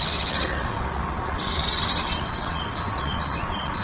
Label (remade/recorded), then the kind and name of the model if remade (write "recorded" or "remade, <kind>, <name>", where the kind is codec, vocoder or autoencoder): remade, vocoder, WaveNeXt